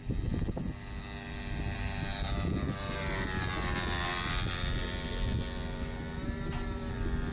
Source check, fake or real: real